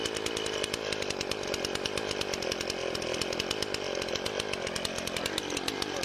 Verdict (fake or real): real